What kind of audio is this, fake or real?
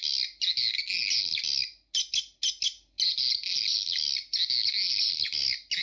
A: real